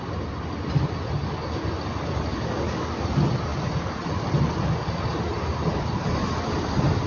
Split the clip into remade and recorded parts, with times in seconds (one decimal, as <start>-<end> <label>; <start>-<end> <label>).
0.0-2.3 recorded; 2.3-3.0 remade; 3.0-7.1 recorded

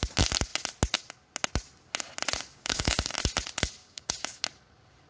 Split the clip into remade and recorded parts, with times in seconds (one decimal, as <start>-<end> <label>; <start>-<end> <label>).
0.0-2.5 recorded; 2.5-3.1 remade; 3.1-3.8 recorded; 3.8-4.4 remade; 4.4-5.1 recorded

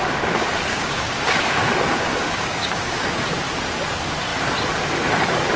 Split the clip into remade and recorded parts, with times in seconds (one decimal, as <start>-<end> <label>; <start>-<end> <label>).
0.0-0.7 recorded; 0.7-1.7 remade; 1.7-2.1 recorded; 2.1-3.3 remade; 3.3-5.6 recorded

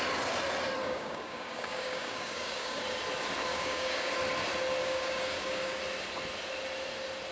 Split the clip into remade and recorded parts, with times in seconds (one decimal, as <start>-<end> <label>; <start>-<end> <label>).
0.0-0.8 recorded; 0.8-2.8 remade; 2.8-3.5 recorded; 3.5-4.1 remade; 4.1-4.8 recorded; 4.8-5.8 remade; 5.8-7.3 recorded

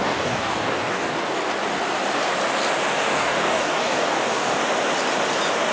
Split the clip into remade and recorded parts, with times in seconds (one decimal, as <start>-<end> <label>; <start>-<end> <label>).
0.0-1.1 remade; 1.1-2.9 recorded; 2.9-4.6 remade; 4.6-5.7 recorded

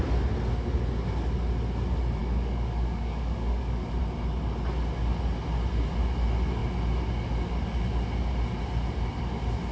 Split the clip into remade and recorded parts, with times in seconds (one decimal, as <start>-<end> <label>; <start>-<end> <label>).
0.0-2.2 recorded; 2.2-4.0 remade; 4.0-9.7 recorded